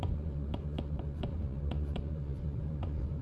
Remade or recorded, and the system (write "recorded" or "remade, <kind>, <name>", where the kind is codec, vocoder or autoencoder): remade, vocoder, Vocos